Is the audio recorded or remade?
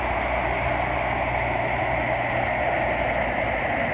recorded